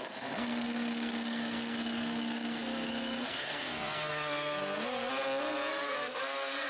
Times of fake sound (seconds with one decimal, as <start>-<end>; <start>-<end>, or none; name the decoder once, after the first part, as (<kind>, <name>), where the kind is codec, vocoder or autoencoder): 0.0-5.1 (codec, SNAC); 5.7-6.7